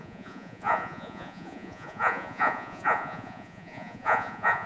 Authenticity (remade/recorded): remade